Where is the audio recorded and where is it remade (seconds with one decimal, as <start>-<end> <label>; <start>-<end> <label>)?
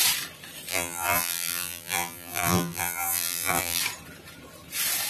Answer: 0.0-0.7 recorded; 0.7-3.8 remade; 3.8-5.1 recorded